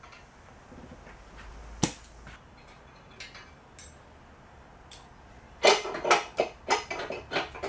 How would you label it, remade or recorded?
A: recorded